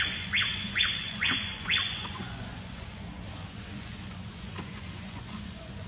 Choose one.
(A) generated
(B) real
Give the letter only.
A